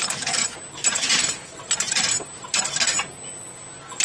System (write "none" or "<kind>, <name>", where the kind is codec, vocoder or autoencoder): none